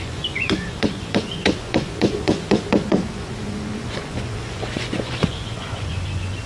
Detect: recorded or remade remade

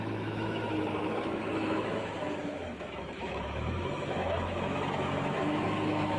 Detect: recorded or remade remade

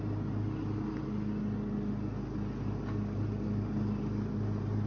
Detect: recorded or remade recorded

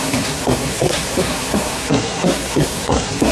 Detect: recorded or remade remade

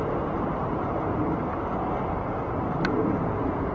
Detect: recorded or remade recorded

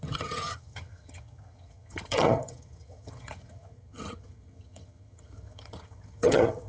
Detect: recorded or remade remade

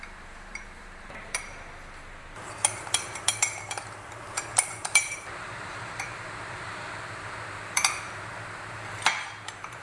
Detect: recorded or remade remade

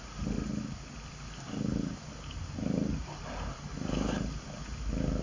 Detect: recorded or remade recorded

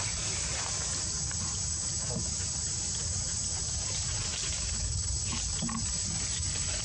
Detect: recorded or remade recorded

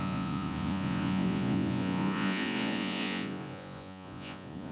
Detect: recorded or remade remade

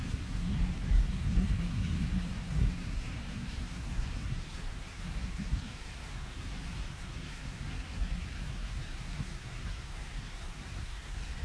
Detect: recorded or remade remade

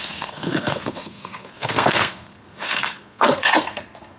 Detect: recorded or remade remade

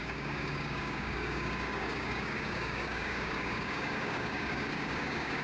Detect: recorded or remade remade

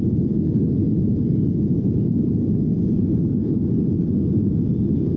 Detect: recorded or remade recorded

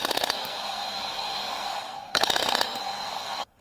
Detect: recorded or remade remade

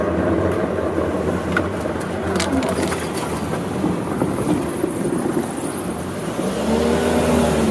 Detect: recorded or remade recorded